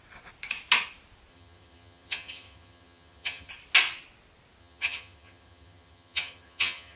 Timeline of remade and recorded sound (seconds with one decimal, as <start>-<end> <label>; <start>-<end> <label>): 0.0-1.3 recorded; 1.3-3.5 remade; 3.5-4.6 recorded; 4.6-7.0 remade